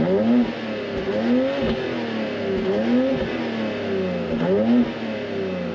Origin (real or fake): real